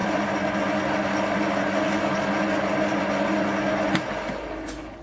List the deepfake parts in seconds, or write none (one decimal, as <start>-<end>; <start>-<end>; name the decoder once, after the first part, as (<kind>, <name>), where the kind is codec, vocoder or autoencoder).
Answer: none